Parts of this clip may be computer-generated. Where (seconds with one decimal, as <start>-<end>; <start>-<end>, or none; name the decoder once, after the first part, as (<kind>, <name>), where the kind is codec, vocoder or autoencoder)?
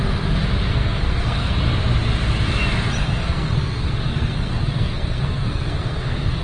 0.7-1.6 (codec, SNAC); 3.0-6.4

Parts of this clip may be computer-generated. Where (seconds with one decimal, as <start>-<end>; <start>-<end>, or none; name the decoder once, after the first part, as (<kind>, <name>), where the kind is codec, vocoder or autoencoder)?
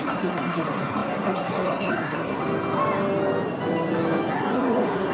0.0-2.4 (codec, SNAC); 4.3-5.1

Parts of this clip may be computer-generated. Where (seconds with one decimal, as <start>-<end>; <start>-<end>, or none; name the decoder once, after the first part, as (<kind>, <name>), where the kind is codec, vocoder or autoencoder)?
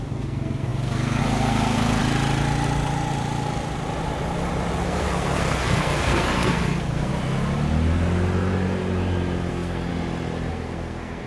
0.0-2.0 (codec, SNAC); 4.8-7.1; 9.5-9.9; 10.5-11.3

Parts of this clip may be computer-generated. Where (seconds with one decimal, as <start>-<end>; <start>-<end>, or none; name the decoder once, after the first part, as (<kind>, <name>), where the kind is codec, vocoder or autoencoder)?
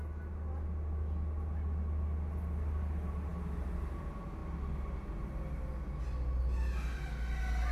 none